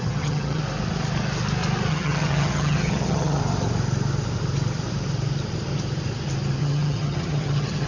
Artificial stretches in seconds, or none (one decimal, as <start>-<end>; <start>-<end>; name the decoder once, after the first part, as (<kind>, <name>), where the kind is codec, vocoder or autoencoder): 0.0-0.6 (vocoder, HiFi-GAN); 1.9-3.4; 6.6-7.9